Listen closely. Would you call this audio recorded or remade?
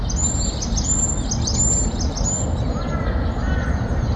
recorded